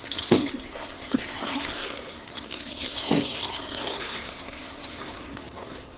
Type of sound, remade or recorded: remade